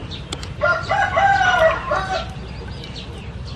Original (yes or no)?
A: yes